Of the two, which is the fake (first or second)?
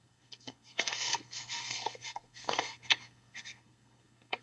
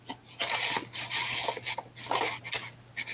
first